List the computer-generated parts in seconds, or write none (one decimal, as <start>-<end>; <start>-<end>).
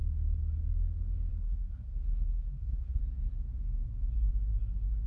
1.3-3.0